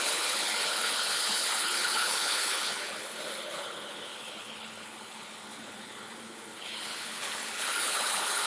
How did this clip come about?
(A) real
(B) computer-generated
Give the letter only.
B